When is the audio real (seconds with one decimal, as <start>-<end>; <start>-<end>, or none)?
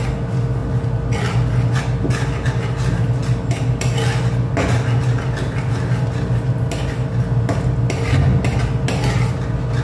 0.0-9.8